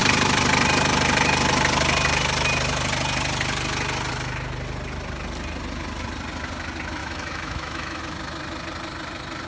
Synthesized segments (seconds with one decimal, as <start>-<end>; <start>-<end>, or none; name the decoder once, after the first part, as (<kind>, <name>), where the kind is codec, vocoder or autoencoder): 7.0-8.0 (autoencoder, DAC-VAE)